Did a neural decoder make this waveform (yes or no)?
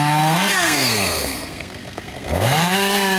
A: yes